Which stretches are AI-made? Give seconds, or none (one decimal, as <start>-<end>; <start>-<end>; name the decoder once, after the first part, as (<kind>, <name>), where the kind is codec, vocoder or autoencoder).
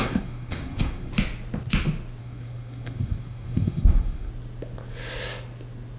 0.0-1.1 (codec, SNAC); 2.2-4.3